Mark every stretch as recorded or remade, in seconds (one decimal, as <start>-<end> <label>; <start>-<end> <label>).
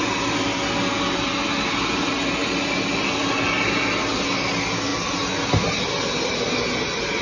0.0-7.2 recorded